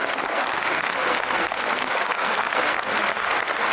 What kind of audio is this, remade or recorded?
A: remade